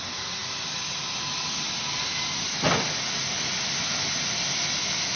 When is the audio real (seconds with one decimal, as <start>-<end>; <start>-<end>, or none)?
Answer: 0.0-5.2